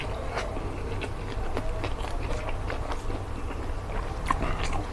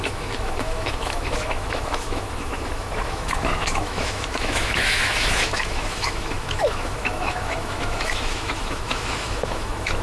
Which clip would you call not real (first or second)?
second